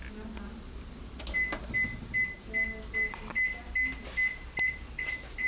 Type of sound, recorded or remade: recorded